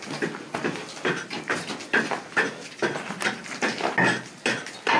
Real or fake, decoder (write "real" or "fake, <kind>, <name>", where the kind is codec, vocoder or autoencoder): real